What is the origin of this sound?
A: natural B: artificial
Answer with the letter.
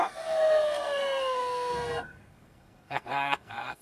B